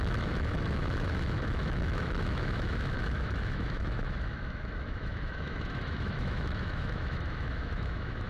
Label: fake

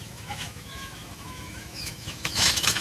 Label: fake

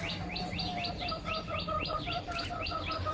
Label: real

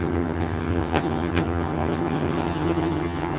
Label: fake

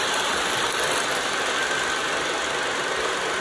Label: real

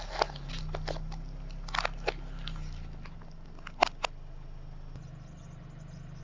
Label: real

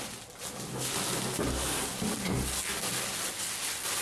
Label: real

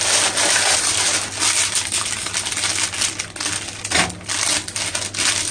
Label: real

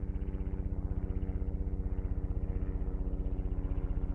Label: real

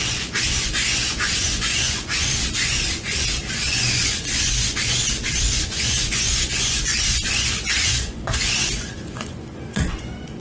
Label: fake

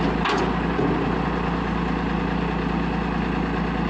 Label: real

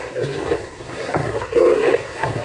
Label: fake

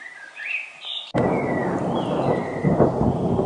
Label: fake